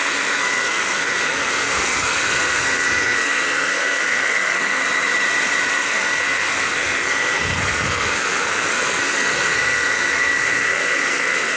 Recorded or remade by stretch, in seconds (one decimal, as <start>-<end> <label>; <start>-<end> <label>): 0.0-4.8 remade; 4.8-5.7 recorded; 5.7-11.6 remade